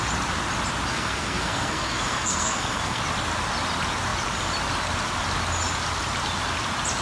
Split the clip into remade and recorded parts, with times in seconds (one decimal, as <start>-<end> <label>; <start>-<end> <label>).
0.0-0.9 recorded; 0.9-3.0 remade; 3.0-7.0 recorded